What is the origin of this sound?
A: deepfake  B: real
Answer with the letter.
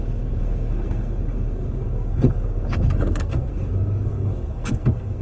A